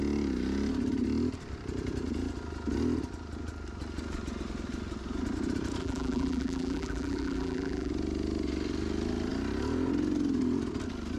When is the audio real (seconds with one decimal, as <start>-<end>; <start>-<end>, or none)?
0.0-5.8; 7.9-11.2